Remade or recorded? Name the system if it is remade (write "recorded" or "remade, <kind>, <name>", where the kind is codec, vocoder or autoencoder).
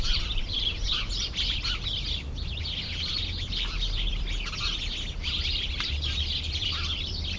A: remade, vocoder, BigVGAN v2